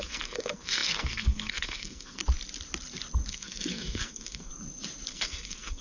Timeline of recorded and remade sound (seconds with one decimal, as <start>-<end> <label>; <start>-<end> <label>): 0.0-2.2 remade; 2.2-3.3 recorded; 3.3-4.5 remade; 4.5-5.1 recorded; 5.1-5.8 remade

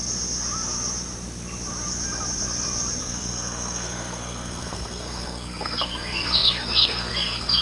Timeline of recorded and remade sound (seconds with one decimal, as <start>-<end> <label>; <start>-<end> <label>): 0.0-3.0 recorded; 3.0-7.6 remade

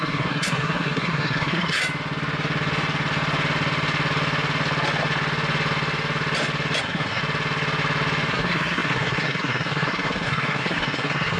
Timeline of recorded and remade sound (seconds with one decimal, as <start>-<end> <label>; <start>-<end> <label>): 0.0-1.8 remade; 1.8-6.8 recorded; 6.8-7.2 remade; 7.2-8.3 recorded; 8.3-11.4 remade

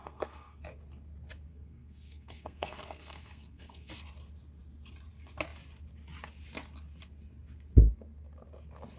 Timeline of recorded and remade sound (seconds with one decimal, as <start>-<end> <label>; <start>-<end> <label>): 0.0-0.6 remade; 0.6-1.5 recorded; 1.5-3.9 remade; 3.9-9.0 recorded

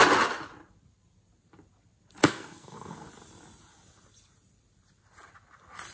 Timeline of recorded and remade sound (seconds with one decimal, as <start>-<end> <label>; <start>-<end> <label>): 0.0-2.2 recorded; 2.2-3.1 remade; 3.1-5.9 recorded

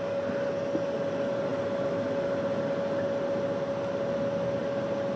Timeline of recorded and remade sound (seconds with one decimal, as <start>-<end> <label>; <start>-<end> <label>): 0.0-5.2 recorded

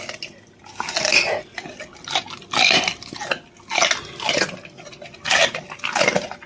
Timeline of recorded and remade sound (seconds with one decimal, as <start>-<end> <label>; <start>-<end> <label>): 0.0-6.5 recorded

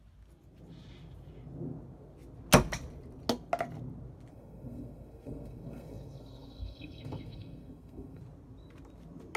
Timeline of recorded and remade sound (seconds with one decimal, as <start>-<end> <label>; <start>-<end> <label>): 0.0-4.3 recorded; 4.3-8.2 remade; 8.2-9.4 recorded